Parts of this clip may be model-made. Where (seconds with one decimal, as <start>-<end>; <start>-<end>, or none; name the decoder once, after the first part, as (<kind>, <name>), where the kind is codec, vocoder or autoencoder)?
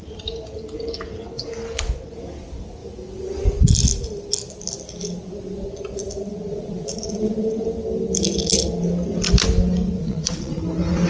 6.5-7.4 (vocoder, Vocos); 10.0-10.6